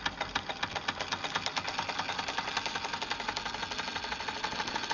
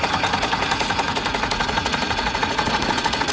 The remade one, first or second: second